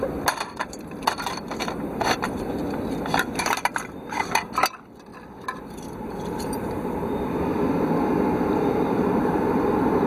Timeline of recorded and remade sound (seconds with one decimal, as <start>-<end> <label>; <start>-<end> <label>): 0.0-10.1 remade

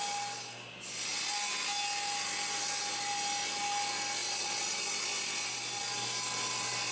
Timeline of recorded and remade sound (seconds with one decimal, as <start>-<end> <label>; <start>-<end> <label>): 0.0-6.9 recorded

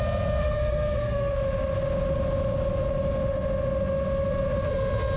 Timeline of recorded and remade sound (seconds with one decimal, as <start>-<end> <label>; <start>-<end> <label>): 0.0-0.4 recorded; 0.4-1.3 remade; 1.3-5.2 recorded